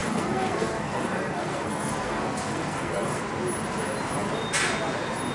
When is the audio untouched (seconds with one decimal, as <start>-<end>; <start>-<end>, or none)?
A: 3.2-5.3